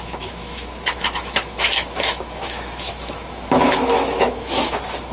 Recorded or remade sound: remade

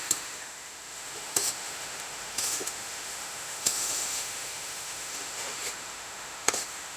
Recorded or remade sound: remade